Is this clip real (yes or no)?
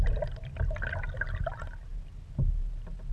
yes